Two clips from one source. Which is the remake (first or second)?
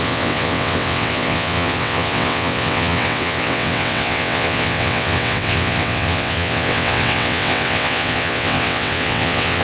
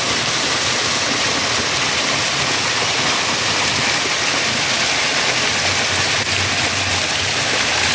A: first